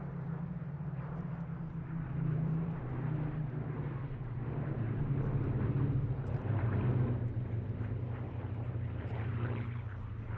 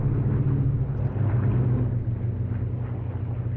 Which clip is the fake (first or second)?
first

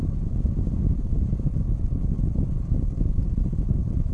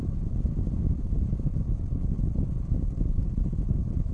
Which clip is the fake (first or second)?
second